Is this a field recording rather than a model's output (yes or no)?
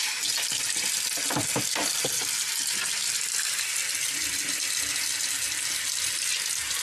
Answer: yes